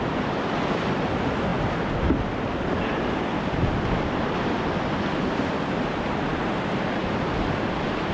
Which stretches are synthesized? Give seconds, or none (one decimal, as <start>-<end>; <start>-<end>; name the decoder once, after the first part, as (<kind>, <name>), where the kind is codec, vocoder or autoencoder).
none